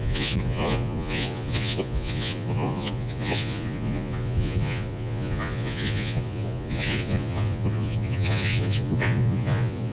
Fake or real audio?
fake